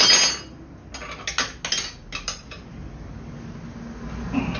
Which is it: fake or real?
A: real